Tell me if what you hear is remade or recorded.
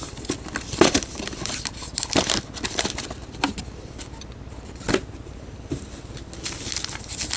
recorded